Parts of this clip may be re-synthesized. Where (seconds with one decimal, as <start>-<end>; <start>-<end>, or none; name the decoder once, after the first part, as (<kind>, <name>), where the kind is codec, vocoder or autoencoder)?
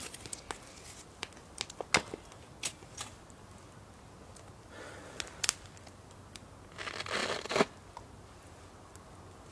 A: none